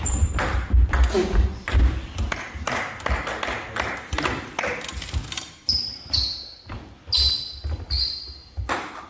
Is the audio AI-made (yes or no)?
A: no